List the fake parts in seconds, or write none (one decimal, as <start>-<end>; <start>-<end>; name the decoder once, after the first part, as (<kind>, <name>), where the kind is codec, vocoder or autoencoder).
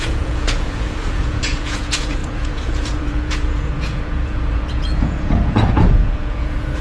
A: 0.0-6.8 (vocoder, Vocos)